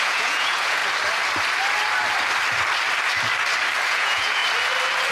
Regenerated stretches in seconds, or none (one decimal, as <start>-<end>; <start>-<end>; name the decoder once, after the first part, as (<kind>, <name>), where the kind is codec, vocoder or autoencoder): 0.0-0.8 (vocoder, Vocos); 3.9-4.4